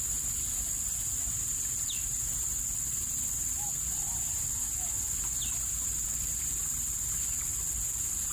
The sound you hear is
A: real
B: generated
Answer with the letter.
A